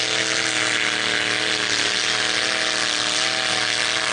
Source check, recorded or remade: recorded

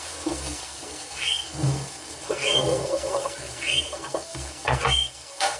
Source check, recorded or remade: remade